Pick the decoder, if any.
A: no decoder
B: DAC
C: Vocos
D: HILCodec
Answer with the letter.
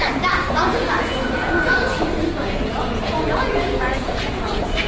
C